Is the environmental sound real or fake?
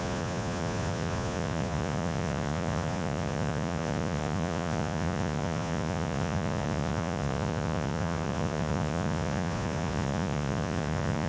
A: fake